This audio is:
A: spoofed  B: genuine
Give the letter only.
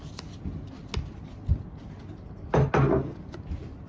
B